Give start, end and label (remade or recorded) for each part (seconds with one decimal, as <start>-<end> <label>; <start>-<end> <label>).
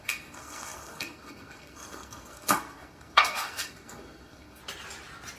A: 0.0-4.6 remade; 4.6-5.4 recorded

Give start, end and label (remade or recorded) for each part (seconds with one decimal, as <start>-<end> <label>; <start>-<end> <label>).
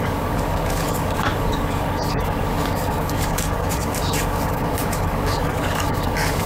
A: 0.0-6.5 remade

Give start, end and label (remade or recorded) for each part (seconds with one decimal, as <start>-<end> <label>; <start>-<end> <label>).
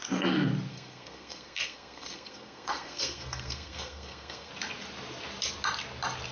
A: 0.0-0.7 recorded; 0.7-4.5 remade; 4.5-6.3 recorded